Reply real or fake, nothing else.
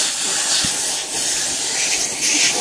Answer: real